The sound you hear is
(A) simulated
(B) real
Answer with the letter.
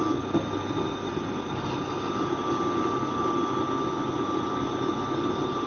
B